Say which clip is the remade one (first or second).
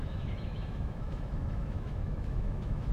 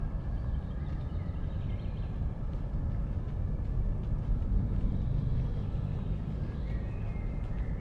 first